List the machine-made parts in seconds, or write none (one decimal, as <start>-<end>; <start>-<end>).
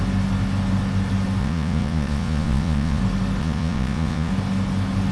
1.4-3.0; 3.4-4.3